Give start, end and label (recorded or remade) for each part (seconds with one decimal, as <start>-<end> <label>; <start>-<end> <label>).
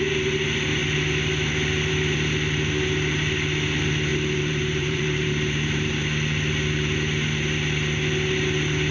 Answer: 0.0-4.1 recorded; 4.1-5.9 remade; 5.9-8.9 recorded